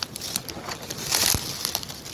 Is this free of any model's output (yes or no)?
yes